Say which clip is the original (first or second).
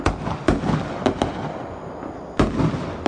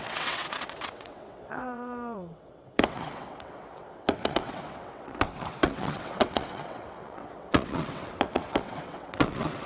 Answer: first